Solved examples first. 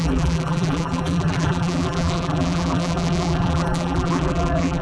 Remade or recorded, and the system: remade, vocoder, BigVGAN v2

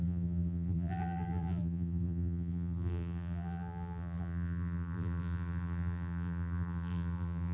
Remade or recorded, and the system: remade, vocoder, BigVGAN v2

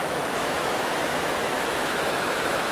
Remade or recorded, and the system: remade, autoencoder, DAC-VAE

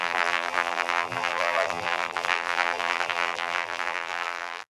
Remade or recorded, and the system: remade, vocoder, BigVGAN v2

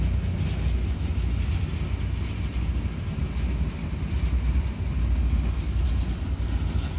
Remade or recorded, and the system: recorded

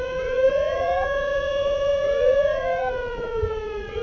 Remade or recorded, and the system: remade, vocoder, Vocos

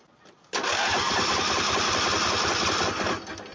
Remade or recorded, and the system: recorded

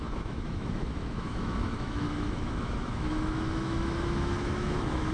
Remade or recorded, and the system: remade, autoencoder, DAC-VAE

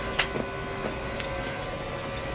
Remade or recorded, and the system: recorded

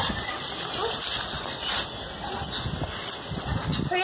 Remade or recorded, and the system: recorded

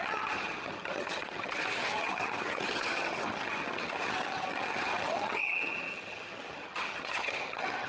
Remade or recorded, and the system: remade, vocoder, HiFi-GAN